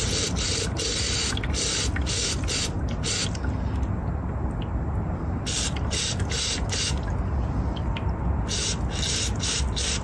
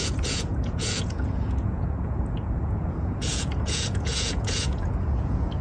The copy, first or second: second